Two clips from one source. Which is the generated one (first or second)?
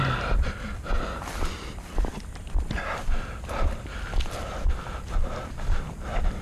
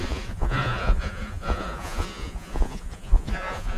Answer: second